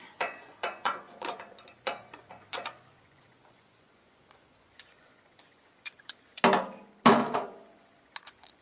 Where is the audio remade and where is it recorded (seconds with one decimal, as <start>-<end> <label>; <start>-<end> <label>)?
0.0-6.4 remade; 6.4-7.1 recorded; 7.1-8.6 remade